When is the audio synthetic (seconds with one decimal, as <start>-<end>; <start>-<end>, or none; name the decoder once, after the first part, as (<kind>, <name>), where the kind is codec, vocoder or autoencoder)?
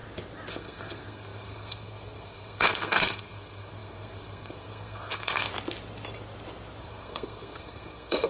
0.5-5.5 (codec, SNAC); 6.8-8.3